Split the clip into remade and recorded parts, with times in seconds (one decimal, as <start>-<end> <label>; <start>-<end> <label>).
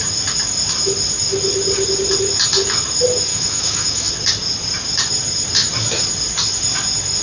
0.0-3.3 recorded; 3.3-4.1 remade; 4.1-7.2 recorded